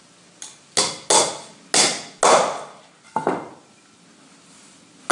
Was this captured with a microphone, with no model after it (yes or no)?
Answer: yes